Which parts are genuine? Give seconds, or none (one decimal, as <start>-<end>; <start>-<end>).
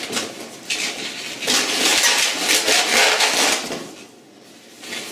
0.0-5.1